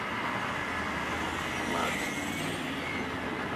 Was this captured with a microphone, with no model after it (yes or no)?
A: yes